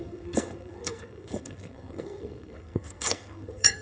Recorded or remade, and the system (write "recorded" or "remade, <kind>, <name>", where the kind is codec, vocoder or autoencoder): remade, codec, SNAC